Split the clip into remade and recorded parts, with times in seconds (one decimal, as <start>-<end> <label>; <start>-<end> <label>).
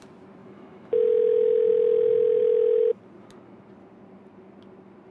0.0-0.4 recorded; 0.4-1.7 remade; 1.7-2.4 recorded; 2.4-3.0 remade; 3.0-5.1 recorded